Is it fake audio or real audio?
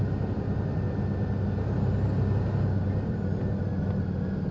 real